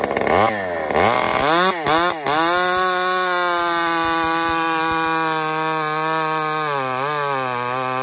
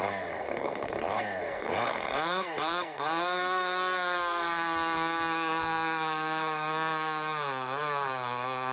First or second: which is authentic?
first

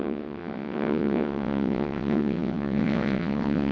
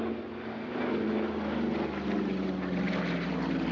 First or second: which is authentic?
second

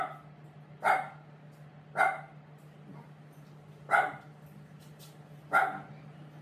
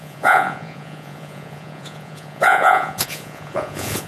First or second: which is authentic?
first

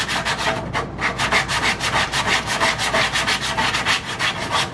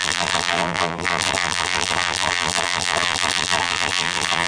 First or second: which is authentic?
first